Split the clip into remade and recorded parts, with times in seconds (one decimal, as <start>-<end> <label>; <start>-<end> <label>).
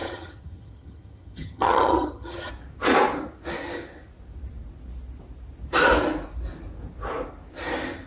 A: 0.0-2.5 remade; 2.5-8.1 recorded